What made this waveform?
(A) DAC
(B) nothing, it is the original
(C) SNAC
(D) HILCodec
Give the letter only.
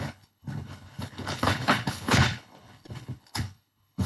D